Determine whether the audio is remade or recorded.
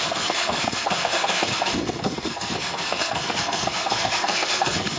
remade